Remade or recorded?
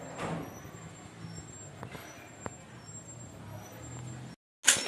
recorded